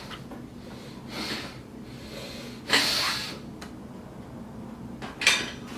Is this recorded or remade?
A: recorded